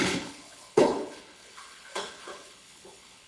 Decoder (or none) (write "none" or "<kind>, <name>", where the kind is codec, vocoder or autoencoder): codec, HILCodec